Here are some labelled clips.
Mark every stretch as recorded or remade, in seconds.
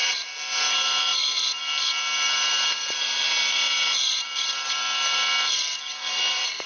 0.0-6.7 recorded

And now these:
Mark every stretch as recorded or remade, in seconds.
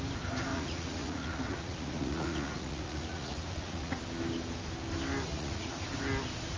0.0-0.5 recorded; 0.5-4.0 remade; 4.0-5.3 recorded; 5.3-5.8 remade; 5.8-6.6 recorded